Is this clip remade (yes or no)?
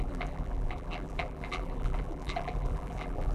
yes